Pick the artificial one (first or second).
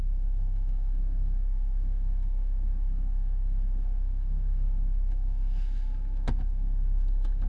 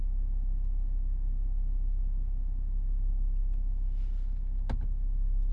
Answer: first